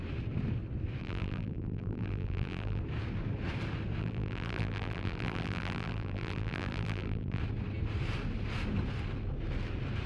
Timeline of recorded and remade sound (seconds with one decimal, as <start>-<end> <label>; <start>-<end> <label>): 0.0-1.0 recorded; 1.0-2.8 remade; 2.8-4.0 recorded; 4.0-7.4 remade; 7.4-10.1 recorded